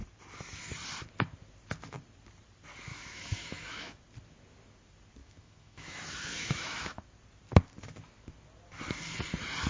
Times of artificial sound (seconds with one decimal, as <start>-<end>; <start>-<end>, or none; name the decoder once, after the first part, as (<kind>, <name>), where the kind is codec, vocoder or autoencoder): 2.9-4.0 (autoencoder, DAC-VAE); 5.2-7.0